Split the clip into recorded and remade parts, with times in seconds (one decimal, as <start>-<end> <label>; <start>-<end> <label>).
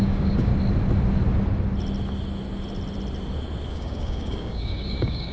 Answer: 0.0-0.5 remade; 0.5-3.7 recorded; 3.7-5.3 remade